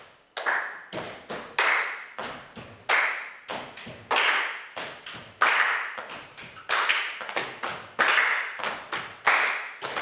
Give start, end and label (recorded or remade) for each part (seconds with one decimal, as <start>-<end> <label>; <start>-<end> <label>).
0.0-10.0 recorded